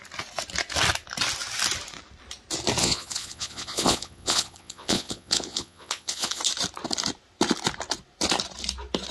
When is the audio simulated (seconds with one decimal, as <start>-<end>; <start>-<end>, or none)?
2.8-6.4